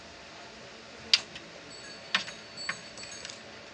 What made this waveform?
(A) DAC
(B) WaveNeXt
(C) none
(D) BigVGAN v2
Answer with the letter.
C